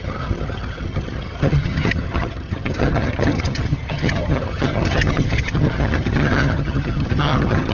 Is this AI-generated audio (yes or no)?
yes